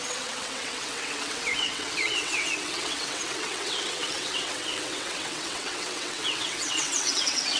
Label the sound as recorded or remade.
remade